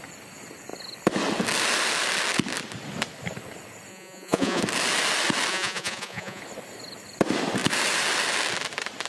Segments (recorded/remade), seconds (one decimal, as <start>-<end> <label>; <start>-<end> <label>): 0.0-3.9 recorded; 3.9-4.6 remade; 4.6-5.5 recorded; 5.5-6.4 remade; 6.4-9.1 recorded